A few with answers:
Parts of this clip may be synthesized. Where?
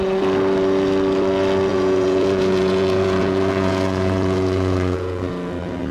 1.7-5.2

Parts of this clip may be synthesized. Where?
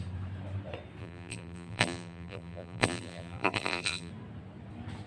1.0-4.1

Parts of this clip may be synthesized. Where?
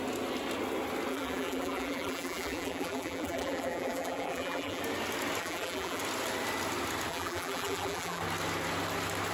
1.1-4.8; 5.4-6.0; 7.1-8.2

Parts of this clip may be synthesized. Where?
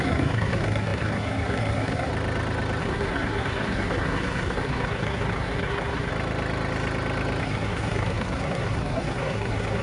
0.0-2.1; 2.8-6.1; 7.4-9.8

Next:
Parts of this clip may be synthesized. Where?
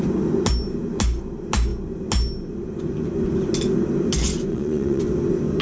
4.5-5.0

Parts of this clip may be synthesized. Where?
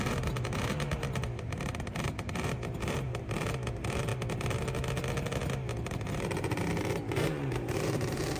0.0-4.1; 5.4-8.4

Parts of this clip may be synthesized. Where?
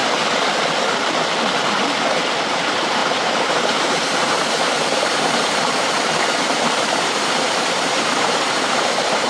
2.3-9.3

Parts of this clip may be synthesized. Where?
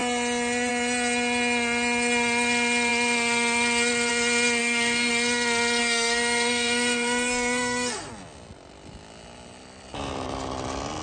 4.6-5.1; 5.8-8.1